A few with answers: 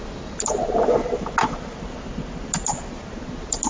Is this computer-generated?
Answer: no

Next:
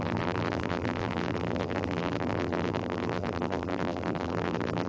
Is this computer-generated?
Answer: yes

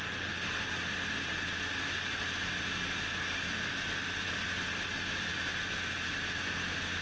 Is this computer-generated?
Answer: no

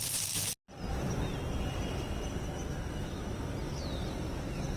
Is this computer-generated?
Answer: no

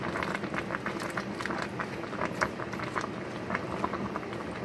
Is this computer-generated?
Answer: no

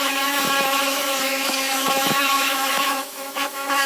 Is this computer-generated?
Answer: yes